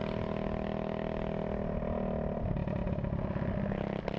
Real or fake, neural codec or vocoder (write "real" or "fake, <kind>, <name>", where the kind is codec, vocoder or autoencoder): real